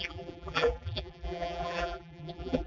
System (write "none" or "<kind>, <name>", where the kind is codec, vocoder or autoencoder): vocoder, BigVGAN v2